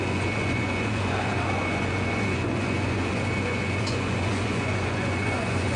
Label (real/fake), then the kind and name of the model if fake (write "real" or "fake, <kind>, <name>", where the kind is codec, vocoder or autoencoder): fake, vocoder, Vocos